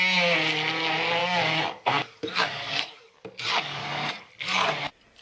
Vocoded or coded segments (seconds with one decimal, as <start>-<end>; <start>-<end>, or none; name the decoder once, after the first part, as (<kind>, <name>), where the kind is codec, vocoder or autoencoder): 1.2-4.3 (codec, DAC)

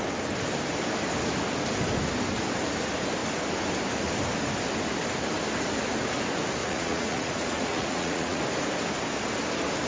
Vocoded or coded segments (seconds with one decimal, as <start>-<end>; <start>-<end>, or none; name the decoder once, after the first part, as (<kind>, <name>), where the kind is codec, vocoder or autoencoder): 6.6-8.4 (vocoder, Vocos)